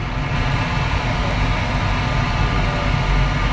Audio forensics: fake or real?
real